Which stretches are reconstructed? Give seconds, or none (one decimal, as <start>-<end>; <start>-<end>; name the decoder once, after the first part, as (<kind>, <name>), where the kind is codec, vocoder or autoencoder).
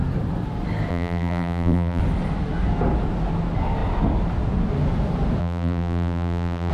0.9-2.0 (vocoder, BigVGAN v2); 5.4-6.7